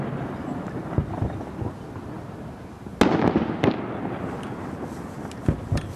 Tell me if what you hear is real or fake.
real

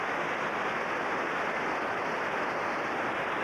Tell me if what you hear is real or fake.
real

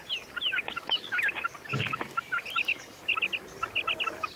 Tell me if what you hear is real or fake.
real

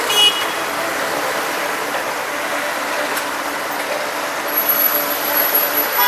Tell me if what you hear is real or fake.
real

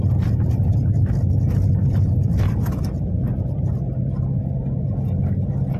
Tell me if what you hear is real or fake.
real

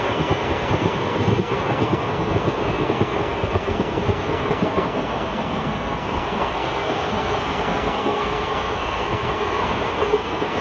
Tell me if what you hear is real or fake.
fake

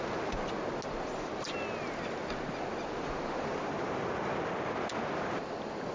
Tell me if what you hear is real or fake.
real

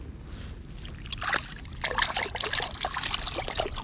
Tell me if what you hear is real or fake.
real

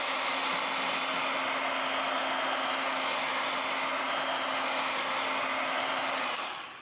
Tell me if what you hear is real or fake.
real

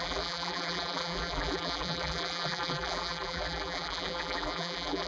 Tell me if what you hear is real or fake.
fake